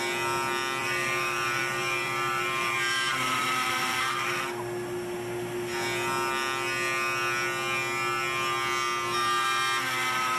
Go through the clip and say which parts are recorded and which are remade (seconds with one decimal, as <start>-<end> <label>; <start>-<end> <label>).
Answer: 0.0-0.8 recorded; 0.8-4.0 remade; 4.0-10.4 recorded